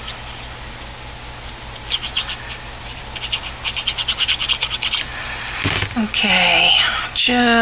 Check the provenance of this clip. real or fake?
real